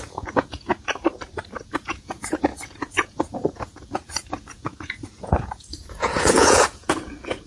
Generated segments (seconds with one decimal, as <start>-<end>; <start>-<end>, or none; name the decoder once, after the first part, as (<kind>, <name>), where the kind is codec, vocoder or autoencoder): 0.0-0.7 (vocoder, Vocos); 1.8-7.5